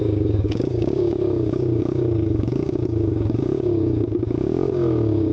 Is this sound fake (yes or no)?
yes